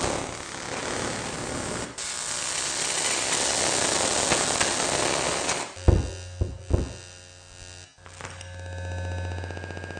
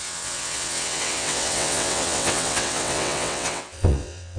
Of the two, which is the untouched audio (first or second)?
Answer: first